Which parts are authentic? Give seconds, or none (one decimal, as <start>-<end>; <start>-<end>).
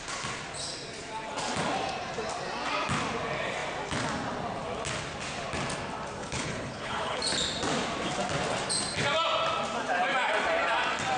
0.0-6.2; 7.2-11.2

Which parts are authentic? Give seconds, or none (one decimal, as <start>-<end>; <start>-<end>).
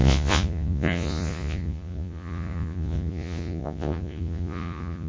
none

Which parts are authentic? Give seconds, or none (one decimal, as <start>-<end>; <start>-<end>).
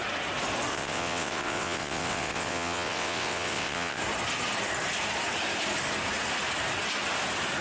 0.0-0.7; 4.0-7.6